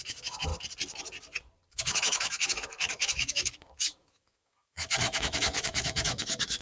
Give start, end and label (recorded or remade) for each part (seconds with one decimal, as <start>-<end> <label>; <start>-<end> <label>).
0.0-0.5 remade; 0.5-1.7 recorded; 1.7-6.6 remade